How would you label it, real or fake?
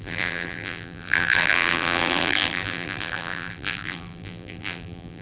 fake